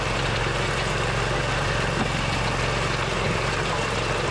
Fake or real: real